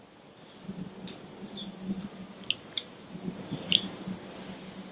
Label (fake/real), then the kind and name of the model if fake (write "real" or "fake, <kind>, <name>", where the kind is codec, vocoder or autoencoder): real